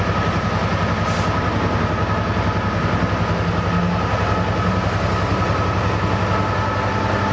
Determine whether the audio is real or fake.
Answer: real